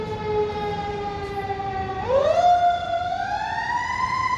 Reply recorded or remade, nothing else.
recorded